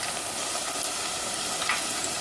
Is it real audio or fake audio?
real